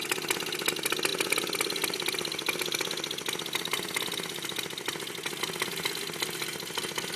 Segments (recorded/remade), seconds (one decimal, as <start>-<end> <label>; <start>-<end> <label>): 0.0-7.2 recorded